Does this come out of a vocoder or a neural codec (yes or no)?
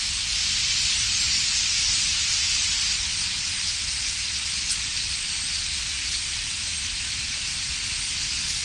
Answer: no